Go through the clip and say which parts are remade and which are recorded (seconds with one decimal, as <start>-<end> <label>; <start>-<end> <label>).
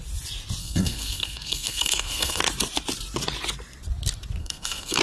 0.0-0.6 recorded; 0.6-2.4 remade; 2.4-4.4 recorded; 4.4-5.0 remade